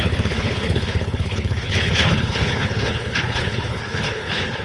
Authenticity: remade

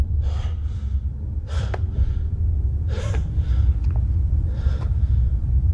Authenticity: remade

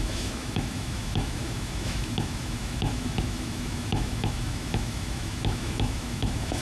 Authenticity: remade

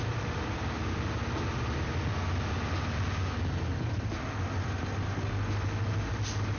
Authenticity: recorded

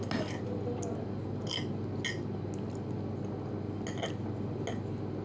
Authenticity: recorded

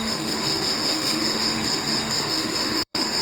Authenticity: remade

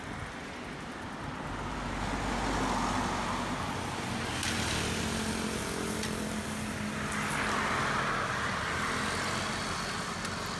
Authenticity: recorded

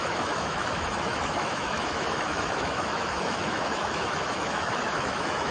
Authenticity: remade